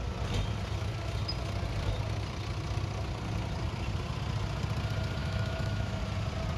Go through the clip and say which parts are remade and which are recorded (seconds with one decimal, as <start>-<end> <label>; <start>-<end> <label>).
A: 0.0-5.2 recorded; 5.2-6.0 remade; 6.0-6.6 recorded